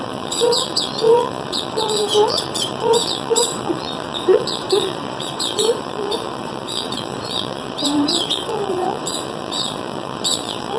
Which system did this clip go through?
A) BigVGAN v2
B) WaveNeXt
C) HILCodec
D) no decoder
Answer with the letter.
B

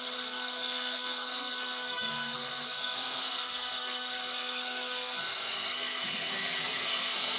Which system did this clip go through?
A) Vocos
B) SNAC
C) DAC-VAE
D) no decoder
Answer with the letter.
B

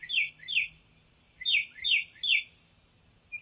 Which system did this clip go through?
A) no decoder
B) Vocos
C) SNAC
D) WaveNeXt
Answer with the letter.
A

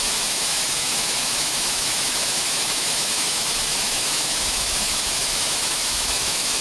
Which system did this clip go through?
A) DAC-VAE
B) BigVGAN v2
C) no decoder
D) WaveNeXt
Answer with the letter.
A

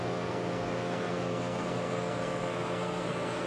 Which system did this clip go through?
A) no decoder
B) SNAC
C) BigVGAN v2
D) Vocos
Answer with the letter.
B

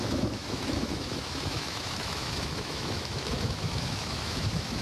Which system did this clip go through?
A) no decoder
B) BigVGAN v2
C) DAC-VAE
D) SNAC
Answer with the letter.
C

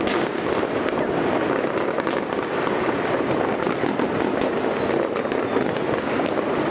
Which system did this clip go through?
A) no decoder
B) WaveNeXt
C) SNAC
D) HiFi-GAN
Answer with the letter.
A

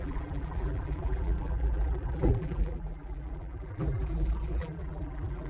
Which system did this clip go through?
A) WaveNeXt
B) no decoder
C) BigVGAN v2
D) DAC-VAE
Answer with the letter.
C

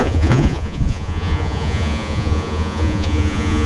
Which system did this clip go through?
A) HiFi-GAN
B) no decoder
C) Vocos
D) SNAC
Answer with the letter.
C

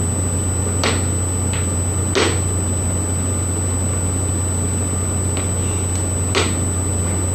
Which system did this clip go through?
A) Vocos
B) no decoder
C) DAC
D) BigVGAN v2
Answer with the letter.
B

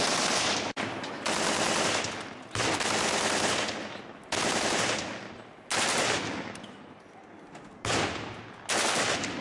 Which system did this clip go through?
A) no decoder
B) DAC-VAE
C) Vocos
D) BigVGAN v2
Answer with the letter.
A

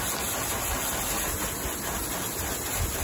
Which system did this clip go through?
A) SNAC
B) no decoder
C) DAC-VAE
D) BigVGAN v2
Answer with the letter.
B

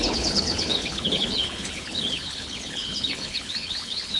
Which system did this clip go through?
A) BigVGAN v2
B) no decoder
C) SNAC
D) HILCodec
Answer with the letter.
D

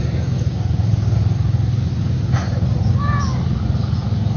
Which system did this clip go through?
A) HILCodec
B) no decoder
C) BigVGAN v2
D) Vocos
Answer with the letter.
B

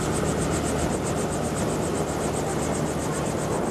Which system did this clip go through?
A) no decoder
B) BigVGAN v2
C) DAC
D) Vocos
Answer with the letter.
A